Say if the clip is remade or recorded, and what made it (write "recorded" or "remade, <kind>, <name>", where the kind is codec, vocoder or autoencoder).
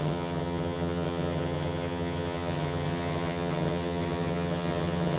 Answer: remade, vocoder, HiFi-GAN